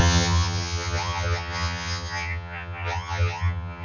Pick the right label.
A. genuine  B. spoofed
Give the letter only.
B